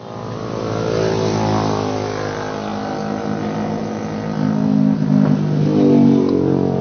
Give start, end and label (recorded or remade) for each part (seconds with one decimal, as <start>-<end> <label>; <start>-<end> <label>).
0.0-6.8 recorded